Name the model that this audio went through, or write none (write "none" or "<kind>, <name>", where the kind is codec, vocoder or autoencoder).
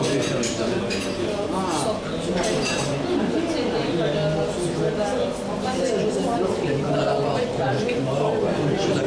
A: none